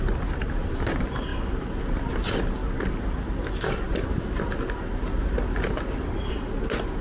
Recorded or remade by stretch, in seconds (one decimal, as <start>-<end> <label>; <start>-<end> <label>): 0.0-7.0 recorded